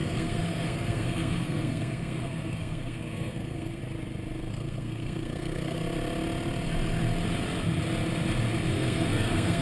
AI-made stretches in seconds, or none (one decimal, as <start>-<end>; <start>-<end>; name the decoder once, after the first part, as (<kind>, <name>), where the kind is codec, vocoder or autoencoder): 0.0-3.8 (codec, SNAC); 4.5-5.8; 8.7-9.6